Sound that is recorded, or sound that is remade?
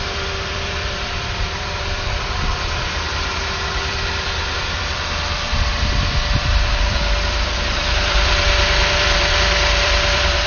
remade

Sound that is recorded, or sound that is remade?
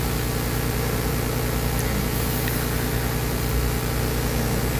recorded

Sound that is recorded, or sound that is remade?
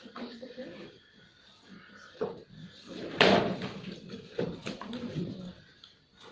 remade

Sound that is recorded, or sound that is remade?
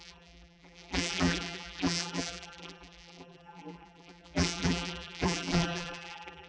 remade